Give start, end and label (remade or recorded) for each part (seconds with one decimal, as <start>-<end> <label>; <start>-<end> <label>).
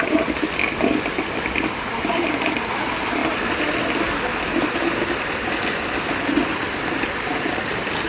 0.0-8.1 recorded